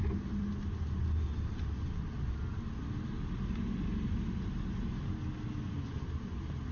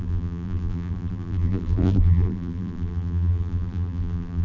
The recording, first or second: first